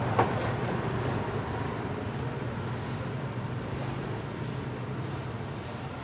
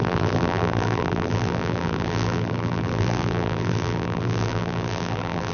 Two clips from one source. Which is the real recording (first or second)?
first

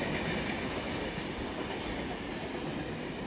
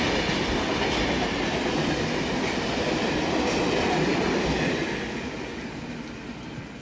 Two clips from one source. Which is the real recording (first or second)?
second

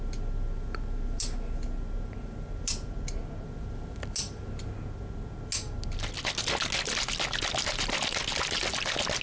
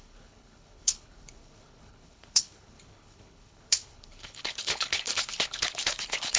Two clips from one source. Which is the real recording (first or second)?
first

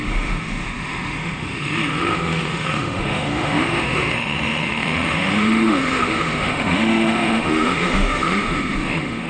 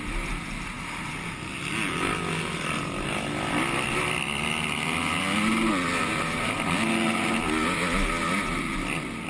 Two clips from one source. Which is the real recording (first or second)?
second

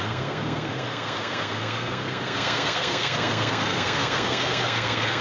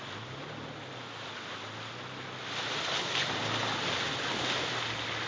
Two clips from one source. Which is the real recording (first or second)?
second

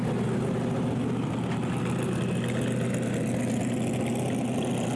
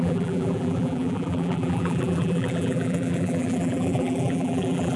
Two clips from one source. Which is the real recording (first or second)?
first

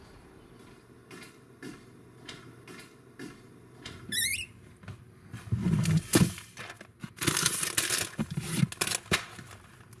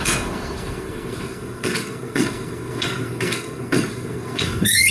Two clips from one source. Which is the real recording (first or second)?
first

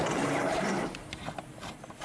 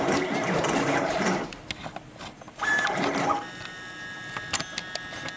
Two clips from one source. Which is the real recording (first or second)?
second